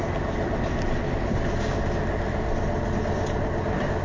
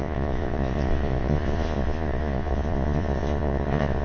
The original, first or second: first